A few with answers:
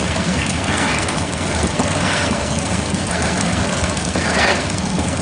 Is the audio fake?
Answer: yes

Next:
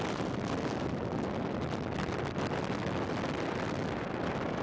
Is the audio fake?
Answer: no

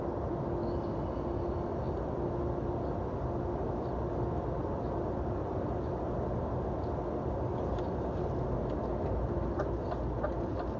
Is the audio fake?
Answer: no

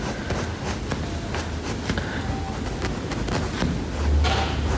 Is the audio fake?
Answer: no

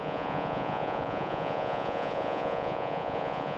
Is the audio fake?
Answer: yes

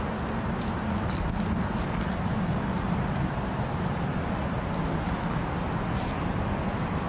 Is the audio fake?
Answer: no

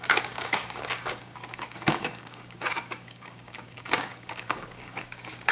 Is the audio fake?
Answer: yes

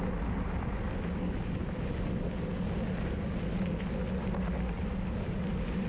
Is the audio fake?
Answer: no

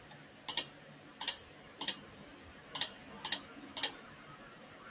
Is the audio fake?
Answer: no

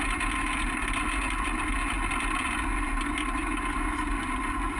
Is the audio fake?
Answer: no